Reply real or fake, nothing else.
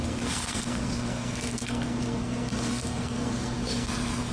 fake